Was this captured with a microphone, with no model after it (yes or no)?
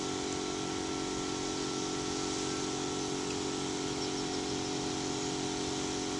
yes